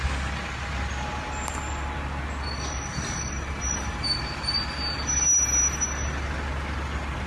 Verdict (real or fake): real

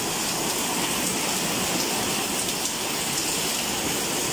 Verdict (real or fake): real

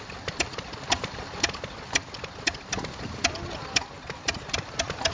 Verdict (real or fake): real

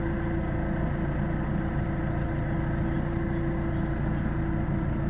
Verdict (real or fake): real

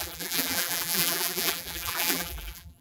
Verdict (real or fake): fake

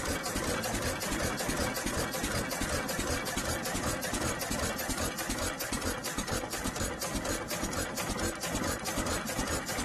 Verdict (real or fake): real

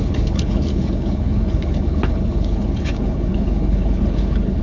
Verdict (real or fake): fake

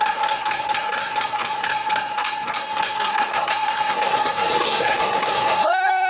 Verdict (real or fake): fake